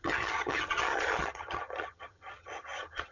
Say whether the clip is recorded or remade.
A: remade